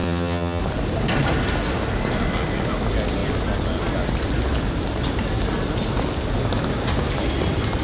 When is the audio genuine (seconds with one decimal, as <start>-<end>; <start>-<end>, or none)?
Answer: 0.6-7.8